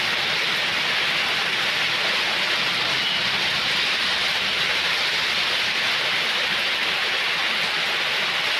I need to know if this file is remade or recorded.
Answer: recorded